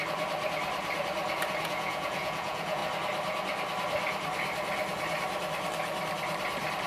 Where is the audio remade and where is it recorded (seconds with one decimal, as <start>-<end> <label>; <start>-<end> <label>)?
0.0-1.6 recorded; 1.6-2.8 remade; 2.8-6.9 recorded